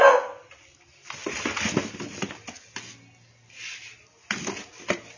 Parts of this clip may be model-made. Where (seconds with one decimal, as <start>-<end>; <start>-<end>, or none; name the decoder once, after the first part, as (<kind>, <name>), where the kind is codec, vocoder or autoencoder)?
none

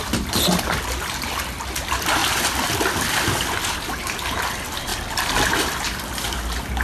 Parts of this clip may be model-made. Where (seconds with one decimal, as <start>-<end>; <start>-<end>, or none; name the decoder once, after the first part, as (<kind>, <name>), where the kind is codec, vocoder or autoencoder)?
none

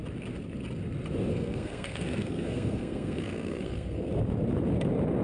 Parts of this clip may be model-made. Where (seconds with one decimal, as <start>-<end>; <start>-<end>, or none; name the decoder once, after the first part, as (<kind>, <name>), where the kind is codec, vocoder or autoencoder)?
1.3-4.0 (codec, SNAC)